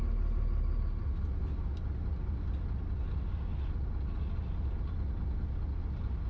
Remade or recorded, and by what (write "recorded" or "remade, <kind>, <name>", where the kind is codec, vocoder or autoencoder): recorded